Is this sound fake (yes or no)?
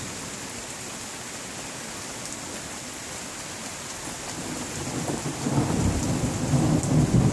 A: no